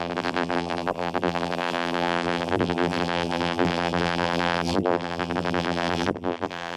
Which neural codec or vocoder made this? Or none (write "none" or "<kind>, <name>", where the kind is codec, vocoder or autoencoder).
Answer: vocoder, BigVGAN v2